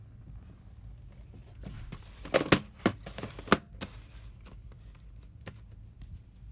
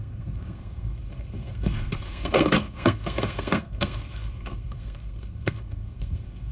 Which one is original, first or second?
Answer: first